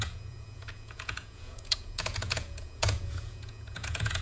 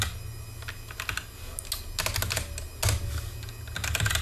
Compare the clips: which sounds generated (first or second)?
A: first